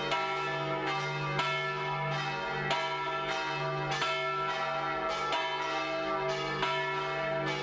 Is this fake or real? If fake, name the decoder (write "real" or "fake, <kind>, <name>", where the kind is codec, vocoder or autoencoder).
real